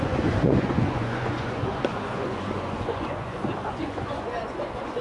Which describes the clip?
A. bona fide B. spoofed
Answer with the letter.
B